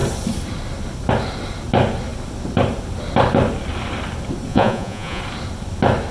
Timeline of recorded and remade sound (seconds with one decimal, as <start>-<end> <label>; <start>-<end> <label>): 0.0-4.5 recorded; 4.5-5.2 remade; 5.2-6.1 recorded